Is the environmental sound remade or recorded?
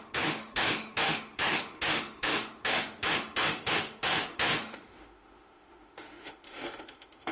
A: remade